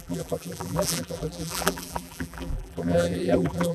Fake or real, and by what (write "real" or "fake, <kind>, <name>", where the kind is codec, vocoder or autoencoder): fake, vocoder, BigVGAN v2